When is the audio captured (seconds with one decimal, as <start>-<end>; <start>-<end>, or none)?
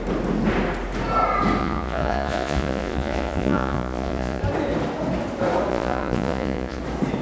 0.0-1.6; 4.4-5.7; 6.8-7.2